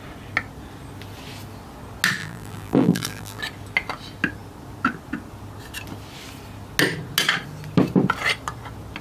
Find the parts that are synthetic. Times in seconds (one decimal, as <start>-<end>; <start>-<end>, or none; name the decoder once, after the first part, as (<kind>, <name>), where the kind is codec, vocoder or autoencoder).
2.2-3.4 (vocoder, BigVGAN v2)